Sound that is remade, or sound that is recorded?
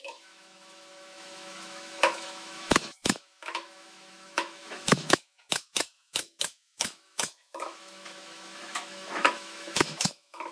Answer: remade